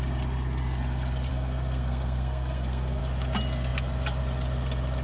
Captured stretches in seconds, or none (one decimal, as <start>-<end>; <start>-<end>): 0.0-1.3; 3.0-5.0